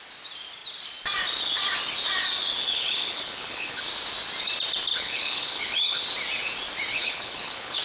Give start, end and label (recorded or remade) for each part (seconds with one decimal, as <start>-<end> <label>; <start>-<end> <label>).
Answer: 0.0-2.6 recorded; 2.6-3.8 remade; 3.8-4.9 recorded; 4.9-6.0 remade; 6.0-6.9 recorded; 6.9-7.8 remade